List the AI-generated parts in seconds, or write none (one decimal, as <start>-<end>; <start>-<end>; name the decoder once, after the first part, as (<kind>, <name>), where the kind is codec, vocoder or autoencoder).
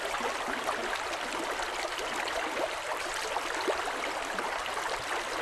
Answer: none